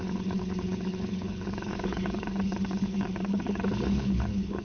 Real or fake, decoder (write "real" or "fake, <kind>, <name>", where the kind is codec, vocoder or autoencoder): fake, codec, HILCodec